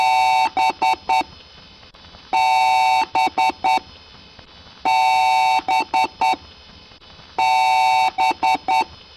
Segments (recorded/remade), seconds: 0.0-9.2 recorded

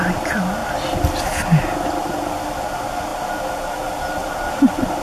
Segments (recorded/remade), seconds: 0.0-5.0 recorded

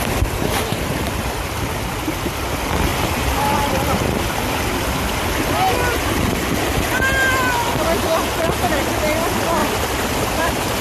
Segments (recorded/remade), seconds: 0.0-2.9 recorded; 2.9-4.9 remade; 4.9-9.6 recorded; 9.6-10.8 remade

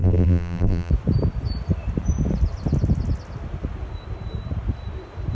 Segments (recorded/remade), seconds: 0.0-0.9 remade; 0.9-5.3 recorded

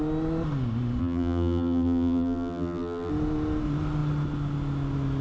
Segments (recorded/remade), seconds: 0.0-1.0 recorded; 1.0-3.1 remade; 3.1-5.2 recorded

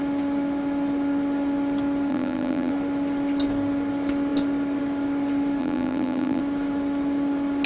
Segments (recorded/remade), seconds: 0.0-2.1 recorded; 2.1-2.7 remade; 2.7-5.6 recorded; 5.6-6.4 remade; 6.4-7.7 recorded

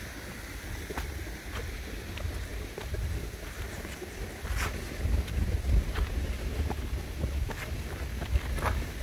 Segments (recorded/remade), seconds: 0.0-2.5 recorded; 2.5-7.6 remade; 7.6-9.0 recorded

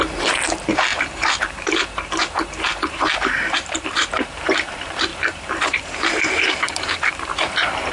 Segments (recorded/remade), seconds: 0.0-7.9 remade